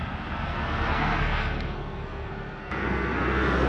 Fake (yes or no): yes